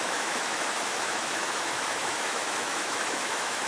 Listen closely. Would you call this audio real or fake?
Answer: fake